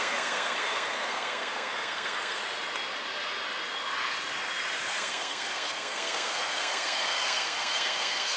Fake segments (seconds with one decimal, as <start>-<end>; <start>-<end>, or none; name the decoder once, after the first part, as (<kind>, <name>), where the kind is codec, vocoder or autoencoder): 0.0-2.4 (codec, SNAC); 4.9-8.4